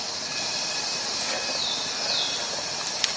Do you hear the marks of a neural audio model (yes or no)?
no